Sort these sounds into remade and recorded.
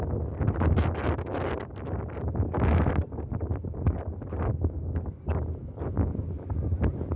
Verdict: recorded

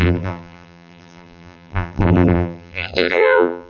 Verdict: remade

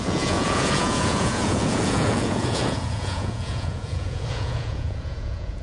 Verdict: remade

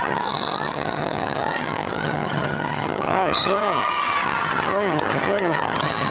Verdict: remade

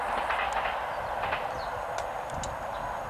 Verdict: recorded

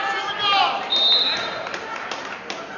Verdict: recorded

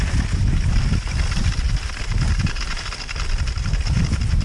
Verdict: remade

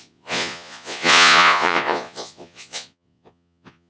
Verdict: remade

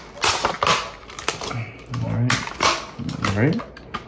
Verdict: recorded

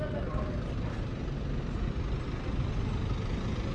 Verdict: recorded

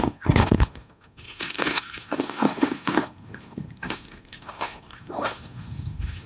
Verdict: remade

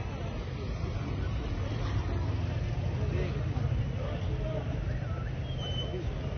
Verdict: recorded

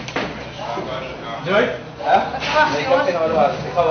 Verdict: recorded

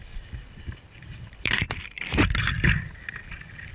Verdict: remade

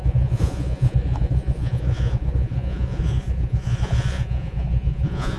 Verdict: remade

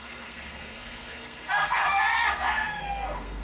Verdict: remade